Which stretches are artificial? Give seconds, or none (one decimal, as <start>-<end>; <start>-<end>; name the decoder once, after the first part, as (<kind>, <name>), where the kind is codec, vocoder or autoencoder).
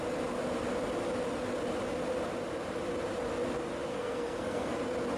3.9-4.8 (codec, SNAC)